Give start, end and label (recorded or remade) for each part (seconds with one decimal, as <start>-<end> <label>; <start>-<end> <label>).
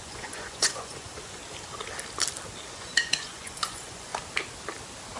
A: 0.0-1.4 remade; 1.4-2.7 recorded; 2.7-4.1 remade; 4.1-5.2 recorded